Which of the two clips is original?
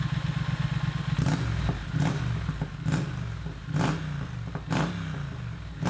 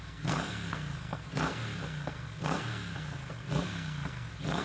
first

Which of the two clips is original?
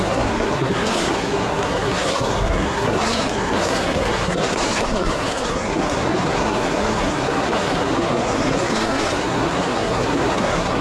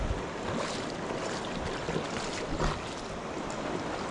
second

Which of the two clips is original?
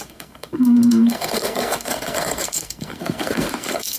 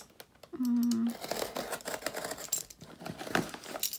second